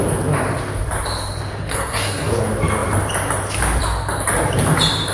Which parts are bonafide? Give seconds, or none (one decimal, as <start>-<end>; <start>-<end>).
0.0-1.7; 2.3-5.1